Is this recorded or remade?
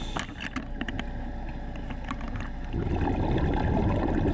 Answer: recorded